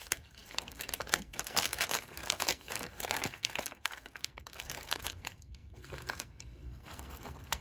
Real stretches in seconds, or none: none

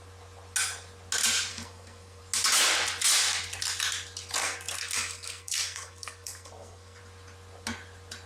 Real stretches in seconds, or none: 0.0-1.5; 2.2-4.4; 7.0-8.3